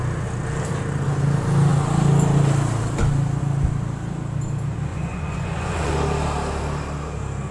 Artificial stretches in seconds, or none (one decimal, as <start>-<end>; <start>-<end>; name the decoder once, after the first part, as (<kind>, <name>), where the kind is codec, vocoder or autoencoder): 4.9-5.9 (vocoder, Vocos)